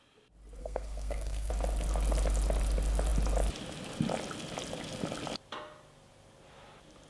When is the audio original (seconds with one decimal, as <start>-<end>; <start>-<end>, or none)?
0.0-0.6; 1.5-7.1